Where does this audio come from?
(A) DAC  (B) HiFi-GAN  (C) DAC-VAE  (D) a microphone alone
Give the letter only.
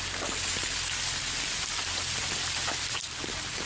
D